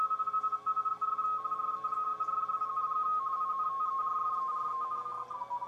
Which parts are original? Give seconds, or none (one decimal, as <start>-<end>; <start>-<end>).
0.0-5.7